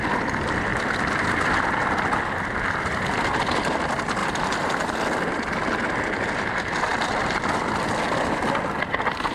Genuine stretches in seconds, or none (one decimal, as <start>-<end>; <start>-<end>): 0.0-0.7; 1.6-4.2; 4.9-9.3